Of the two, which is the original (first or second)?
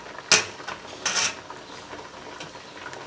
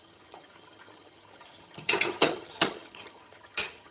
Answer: first